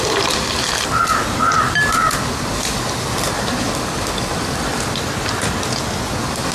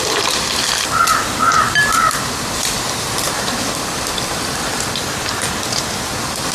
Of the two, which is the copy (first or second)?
second